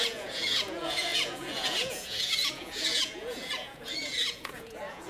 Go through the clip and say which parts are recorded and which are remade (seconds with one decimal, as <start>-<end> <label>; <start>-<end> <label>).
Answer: 0.0-5.1 remade